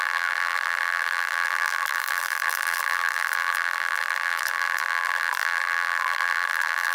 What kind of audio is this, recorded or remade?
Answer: remade